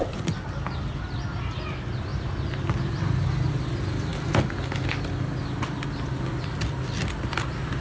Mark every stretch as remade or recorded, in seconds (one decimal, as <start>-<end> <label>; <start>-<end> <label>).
0.0-2.1 remade; 2.1-3.5 recorded; 3.5-4.1 remade; 4.1-5.4 recorded; 5.4-7.8 remade